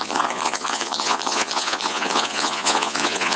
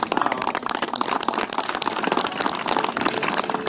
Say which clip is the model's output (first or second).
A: first